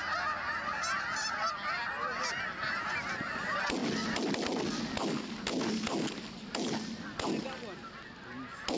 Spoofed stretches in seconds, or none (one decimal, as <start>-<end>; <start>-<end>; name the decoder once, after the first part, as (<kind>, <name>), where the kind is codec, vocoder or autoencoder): none